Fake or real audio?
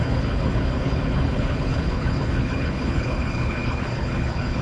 fake